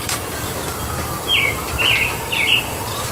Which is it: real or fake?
real